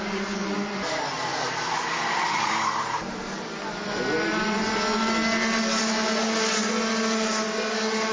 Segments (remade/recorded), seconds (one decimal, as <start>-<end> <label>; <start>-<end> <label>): 0.0-8.1 recorded